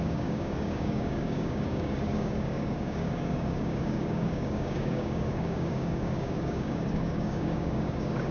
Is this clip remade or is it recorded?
remade